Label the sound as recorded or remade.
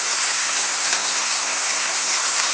remade